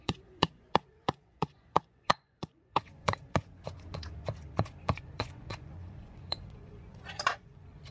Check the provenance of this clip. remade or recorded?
remade